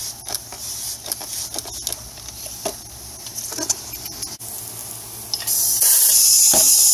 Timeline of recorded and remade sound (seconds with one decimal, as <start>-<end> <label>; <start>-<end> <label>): 0.0-6.9 recorded